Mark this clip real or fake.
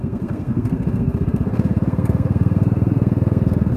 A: fake